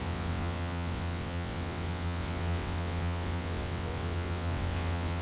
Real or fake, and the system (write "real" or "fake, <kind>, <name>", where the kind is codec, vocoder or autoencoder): fake, vocoder, WaveNeXt